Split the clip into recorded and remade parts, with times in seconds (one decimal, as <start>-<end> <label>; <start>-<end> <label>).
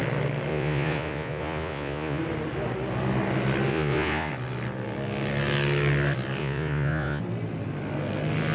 0.0-0.5 recorded; 0.5-2.2 remade; 2.2-3.7 recorded; 3.7-4.3 remade; 4.3-6.4 recorded; 6.4-7.2 remade; 7.2-8.5 recorded